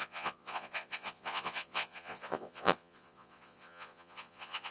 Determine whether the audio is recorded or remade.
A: remade